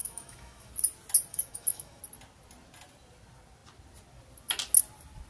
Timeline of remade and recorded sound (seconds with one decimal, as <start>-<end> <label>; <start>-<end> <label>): 0.0-0.7 remade; 0.7-1.3 recorded; 1.3-2.0 remade; 2.0-5.3 recorded